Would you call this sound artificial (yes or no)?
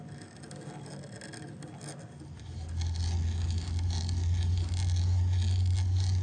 no